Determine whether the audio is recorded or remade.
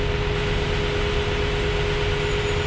recorded